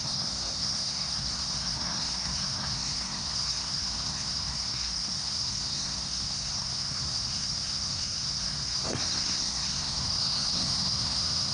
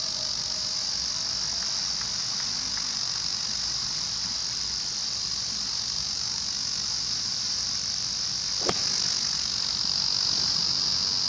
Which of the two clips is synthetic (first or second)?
first